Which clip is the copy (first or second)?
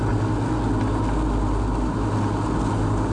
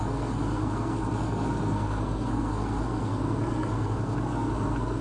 second